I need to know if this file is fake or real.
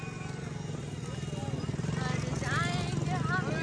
real